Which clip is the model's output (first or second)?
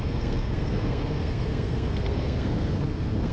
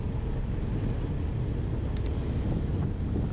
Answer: first